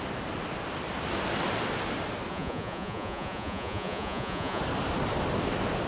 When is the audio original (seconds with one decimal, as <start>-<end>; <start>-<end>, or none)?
0.0-2.3; 4.6-5.9